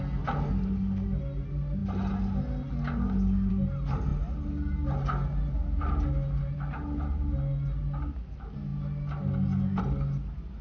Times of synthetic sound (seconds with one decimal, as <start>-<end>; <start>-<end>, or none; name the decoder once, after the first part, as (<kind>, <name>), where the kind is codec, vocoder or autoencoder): none